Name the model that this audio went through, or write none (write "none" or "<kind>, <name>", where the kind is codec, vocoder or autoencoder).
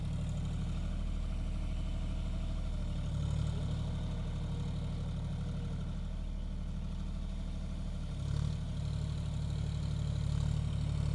none